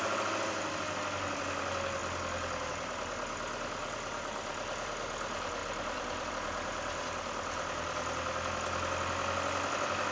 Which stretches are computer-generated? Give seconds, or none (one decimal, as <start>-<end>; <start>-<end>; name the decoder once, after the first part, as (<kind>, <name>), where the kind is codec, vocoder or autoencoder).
5.6-6.3 (vocoder, BigVGAN v2)